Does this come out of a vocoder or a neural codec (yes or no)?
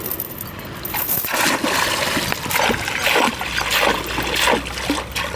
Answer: no